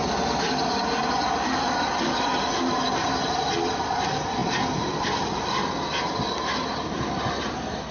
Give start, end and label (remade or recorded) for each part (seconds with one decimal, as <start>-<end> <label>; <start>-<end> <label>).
0.0-7.9 recorded

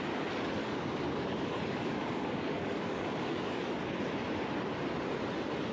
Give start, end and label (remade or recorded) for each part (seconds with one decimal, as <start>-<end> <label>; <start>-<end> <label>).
0.0-0.6 recorded; 0.6-4.0 remade; 4.0-5.7 recorded

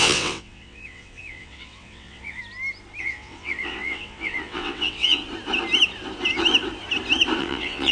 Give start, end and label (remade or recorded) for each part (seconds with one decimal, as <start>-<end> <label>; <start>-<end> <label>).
0.0-2.4 remade; 2.4-3.0 recorded; 3.0-5.2 remade; 5.2-7.4 recorded; 7.4-7.9 remade

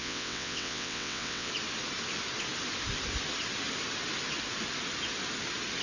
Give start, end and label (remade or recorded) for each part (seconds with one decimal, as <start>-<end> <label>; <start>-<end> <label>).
0.0-1.5 remade; 1.5-5.8 recorded

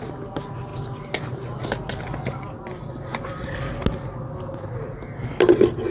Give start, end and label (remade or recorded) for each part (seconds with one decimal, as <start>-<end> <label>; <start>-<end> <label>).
0.0-5.9 recorded